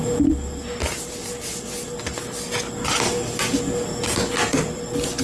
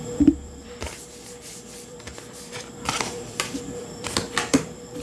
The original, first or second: first